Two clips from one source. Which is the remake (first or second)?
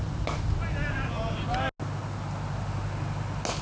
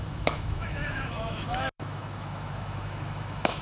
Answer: second